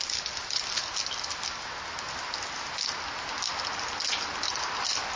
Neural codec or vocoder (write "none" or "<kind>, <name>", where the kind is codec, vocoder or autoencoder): none